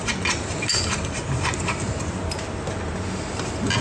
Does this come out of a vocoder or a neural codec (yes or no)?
no